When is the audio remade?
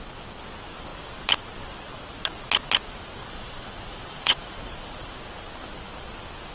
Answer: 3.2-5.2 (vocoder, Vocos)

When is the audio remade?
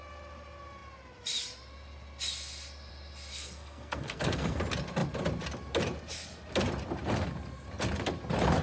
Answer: 3.3-4.6 (codec, SNAC)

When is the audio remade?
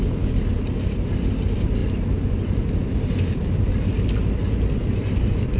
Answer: none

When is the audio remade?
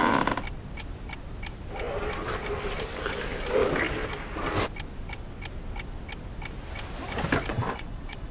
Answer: 7.5-8.3 (vocoder, Vocos)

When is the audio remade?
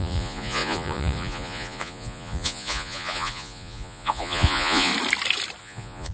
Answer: 0.0-4.9 (vocoder, Vocos); 5.6-6.1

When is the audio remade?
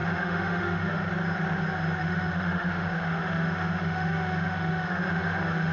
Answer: 0.0-1.1 (autoencoder, DAC-VAE); 2.0-5.7